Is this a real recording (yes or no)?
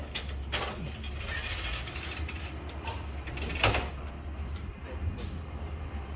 yes